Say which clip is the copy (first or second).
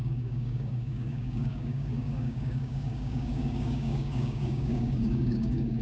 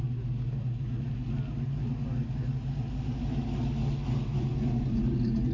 first